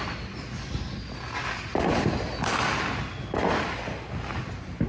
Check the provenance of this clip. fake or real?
real